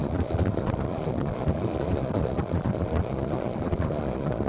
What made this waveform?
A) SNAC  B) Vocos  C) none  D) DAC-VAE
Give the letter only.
B